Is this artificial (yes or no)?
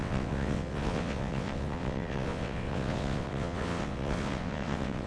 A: yes